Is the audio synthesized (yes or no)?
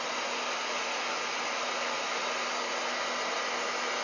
no